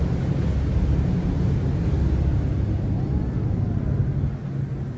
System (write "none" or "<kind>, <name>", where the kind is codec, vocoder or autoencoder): none